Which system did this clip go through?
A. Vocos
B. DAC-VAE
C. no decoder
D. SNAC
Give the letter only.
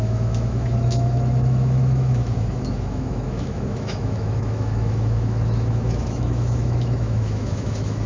B